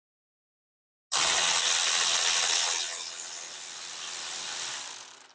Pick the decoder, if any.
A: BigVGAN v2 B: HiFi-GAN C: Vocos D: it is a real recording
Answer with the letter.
D